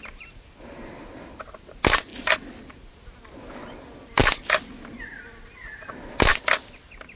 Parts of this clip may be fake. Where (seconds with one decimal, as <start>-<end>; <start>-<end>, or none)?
none

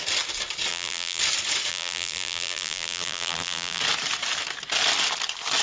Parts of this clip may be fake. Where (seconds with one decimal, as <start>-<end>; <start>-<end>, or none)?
0.7-1.2; 1.7-3.8

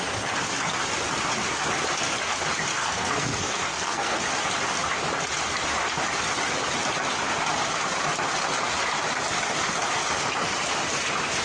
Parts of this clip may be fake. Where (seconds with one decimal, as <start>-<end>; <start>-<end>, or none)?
2.7-4.2